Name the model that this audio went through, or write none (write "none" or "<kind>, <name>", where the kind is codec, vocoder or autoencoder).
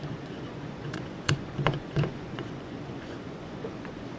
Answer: vocoder, Vocos